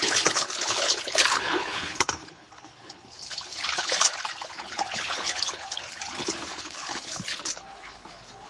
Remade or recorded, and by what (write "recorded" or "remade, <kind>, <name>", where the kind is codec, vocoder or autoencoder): remade, codec, HILCodec